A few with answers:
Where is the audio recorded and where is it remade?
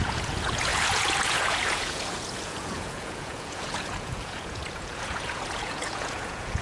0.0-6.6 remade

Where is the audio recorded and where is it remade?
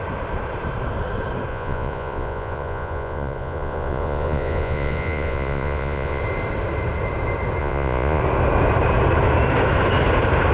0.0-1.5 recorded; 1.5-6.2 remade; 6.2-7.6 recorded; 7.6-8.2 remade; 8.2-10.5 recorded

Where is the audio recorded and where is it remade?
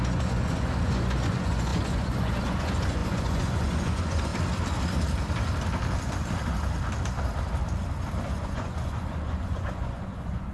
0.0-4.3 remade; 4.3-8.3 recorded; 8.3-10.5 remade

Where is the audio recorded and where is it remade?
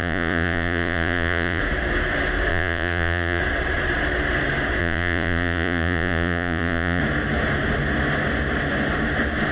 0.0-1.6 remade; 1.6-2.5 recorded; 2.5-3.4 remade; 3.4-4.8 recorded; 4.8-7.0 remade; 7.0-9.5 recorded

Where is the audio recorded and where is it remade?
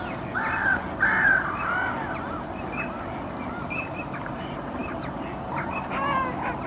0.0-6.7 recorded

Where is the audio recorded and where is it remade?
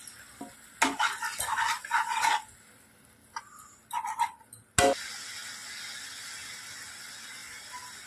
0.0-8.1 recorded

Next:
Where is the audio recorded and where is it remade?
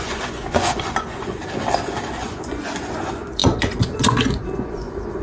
0.0-1.4 remade; 1.4-2.1 recorded; 2.1-5.2 remade